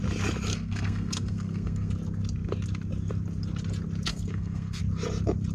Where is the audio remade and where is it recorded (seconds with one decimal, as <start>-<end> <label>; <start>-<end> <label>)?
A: 0.0-0.5 recorded; 0.5-1.9 remade; 1.9-4.1 recorded; 4.1-4.8 remade; 4.8-5.5 recorded